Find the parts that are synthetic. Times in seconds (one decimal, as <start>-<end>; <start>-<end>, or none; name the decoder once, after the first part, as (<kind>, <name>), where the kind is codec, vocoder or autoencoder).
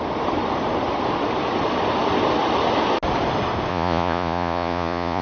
3.7-5.2 (vocoder, Vocos)